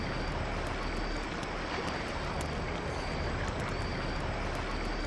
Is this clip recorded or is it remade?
recorded